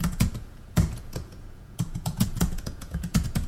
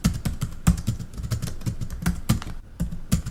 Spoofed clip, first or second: first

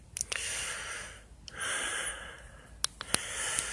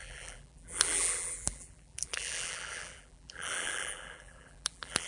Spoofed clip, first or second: second